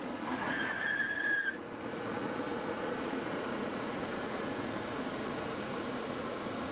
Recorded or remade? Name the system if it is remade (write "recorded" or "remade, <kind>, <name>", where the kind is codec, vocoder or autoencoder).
remade, vocoder, Vocos